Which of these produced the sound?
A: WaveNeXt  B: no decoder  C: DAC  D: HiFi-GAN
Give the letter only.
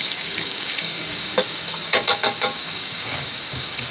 C